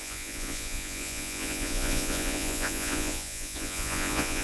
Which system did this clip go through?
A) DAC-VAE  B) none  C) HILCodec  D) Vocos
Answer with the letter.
D